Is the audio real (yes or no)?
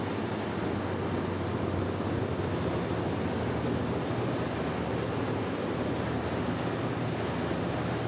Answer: yes